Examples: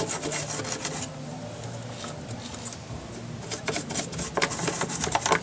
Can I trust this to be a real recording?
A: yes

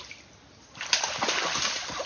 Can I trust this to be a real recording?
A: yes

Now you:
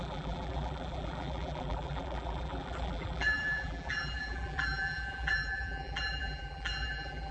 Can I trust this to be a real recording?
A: no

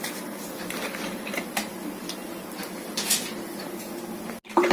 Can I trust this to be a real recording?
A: yes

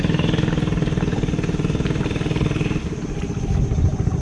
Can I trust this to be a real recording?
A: yes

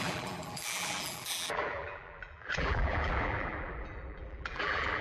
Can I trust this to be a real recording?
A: no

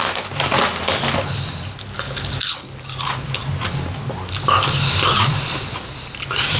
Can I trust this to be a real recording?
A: yes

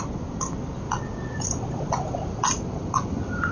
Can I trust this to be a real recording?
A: yes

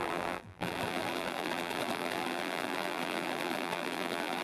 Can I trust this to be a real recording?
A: no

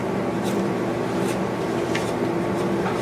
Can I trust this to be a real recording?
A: no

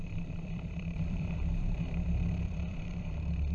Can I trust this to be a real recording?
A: no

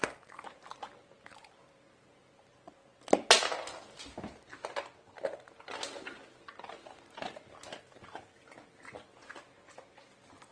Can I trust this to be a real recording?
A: yes